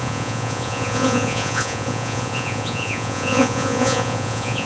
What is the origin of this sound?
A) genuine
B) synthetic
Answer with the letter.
B